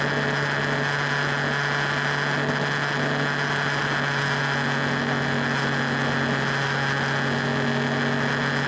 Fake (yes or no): no